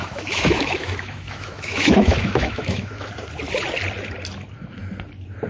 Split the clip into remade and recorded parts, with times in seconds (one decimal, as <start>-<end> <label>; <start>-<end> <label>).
0.0-3.1 remade; 3.1-5.5 recorded